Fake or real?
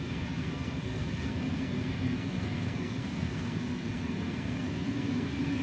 fake